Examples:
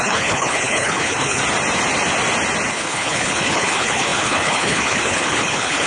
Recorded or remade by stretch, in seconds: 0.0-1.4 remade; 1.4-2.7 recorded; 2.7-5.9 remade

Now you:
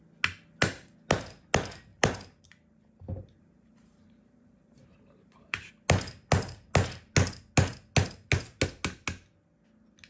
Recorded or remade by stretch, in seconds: 0.0-1.9 recorded; 1.9-5.7 remade; 5.7-10.1 recorded

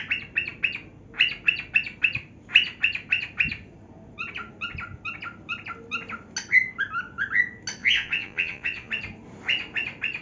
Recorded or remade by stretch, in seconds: 0.0-7.8 recorded; 7.8-8.9 remade; 8.9-10.2 recorded

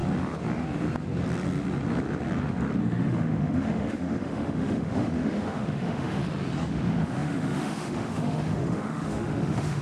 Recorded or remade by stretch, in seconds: 0.0-2.8 recorded; 2.8-6.2 remade; 6.2-6.7 recorded; 6.7-9.8 remade